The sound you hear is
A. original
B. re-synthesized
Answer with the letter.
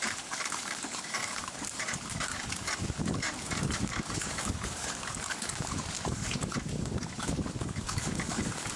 B